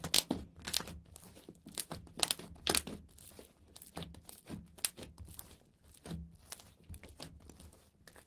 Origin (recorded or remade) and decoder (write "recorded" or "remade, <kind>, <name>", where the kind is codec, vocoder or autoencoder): recorded